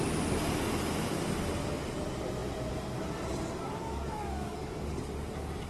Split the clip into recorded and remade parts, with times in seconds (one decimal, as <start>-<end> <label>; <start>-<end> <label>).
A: 0.0-3.8 recorded; 3.8-5.1 remade; 5.1-5.7 recorded